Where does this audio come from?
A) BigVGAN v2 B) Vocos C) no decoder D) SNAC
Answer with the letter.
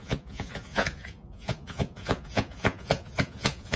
B